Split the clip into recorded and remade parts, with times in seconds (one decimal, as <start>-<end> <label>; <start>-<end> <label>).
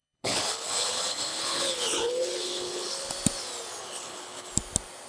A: 0.0-3.1 remade; 3.1-3.8 recorded; 3.8-4.5 remade; 4.5-5.1 recorded